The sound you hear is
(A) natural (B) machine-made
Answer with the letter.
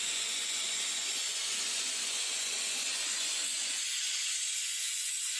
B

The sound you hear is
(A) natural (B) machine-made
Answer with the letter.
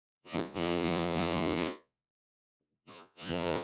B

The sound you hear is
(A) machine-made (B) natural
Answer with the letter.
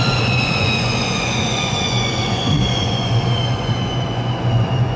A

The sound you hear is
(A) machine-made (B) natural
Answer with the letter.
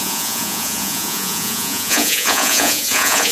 A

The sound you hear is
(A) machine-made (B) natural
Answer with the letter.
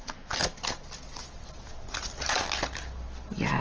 B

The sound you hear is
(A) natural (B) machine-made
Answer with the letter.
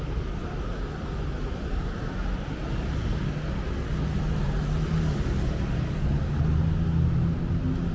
A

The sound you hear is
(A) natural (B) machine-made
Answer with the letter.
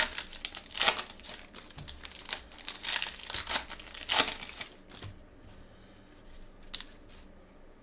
A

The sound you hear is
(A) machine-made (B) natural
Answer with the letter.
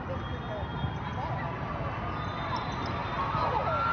B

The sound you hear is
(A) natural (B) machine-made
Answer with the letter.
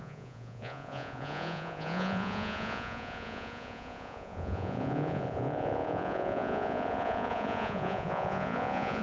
B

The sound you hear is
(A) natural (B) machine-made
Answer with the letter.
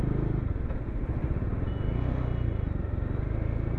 A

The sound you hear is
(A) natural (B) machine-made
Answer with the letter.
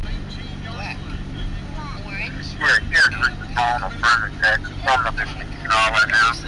A